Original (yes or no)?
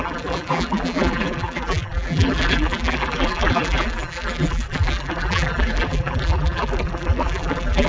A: no